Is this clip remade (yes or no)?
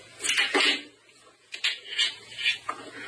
yes